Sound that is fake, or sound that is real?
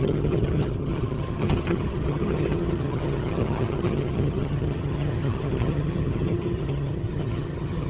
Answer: fake